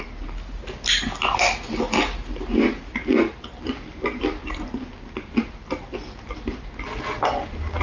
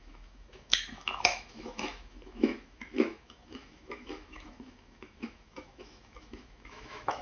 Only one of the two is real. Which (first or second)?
first